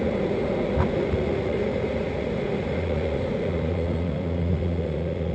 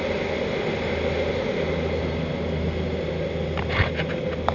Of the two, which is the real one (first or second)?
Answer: second